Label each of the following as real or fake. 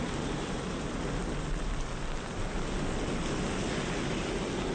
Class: real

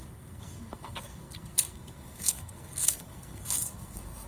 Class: fake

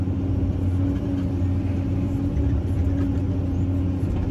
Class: real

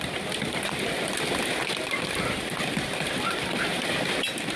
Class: real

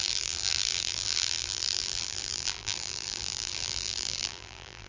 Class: fake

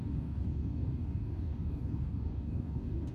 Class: fake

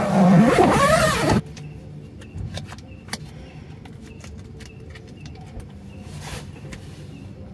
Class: real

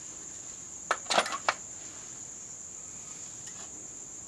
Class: real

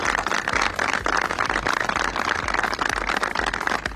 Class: real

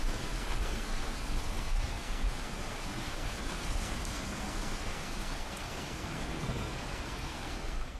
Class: fake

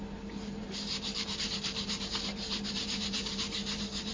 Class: fake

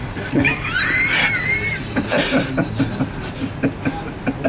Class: real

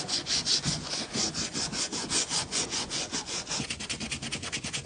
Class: fake